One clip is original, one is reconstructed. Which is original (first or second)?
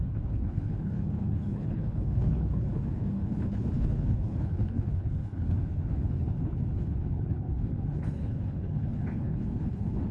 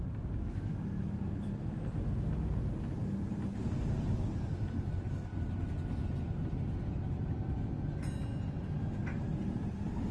second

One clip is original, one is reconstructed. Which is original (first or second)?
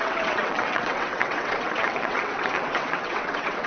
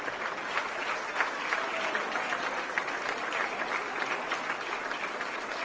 second